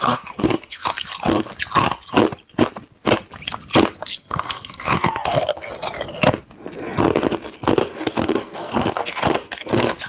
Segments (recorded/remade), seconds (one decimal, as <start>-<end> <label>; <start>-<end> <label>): 0.0-1.5 remade; 1.5-4.1 recorded; 4.1-5.7 remade; 5.7-7.8 recorded; 7.8-10.1 remade